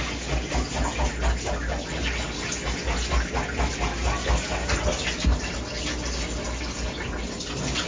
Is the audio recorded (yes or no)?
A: yes